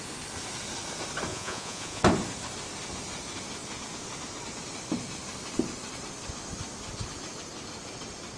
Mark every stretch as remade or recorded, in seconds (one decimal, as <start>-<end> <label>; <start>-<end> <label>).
0.0-1.3 recorded; 1.3-2.0 remade; 2.0-8.4 recorded